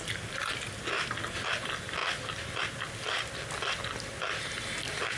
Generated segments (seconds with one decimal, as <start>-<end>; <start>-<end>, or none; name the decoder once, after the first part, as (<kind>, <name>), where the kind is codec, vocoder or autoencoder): none